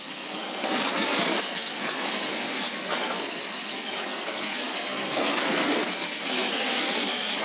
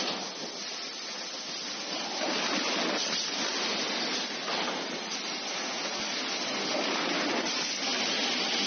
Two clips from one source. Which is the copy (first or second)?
first